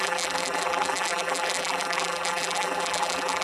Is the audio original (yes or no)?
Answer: no